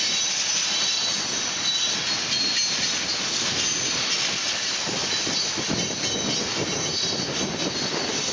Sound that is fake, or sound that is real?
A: real